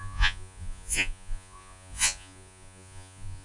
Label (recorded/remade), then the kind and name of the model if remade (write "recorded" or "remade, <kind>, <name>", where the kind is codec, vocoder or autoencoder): remade, vocoder, Vocos